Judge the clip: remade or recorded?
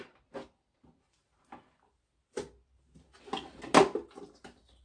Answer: recorded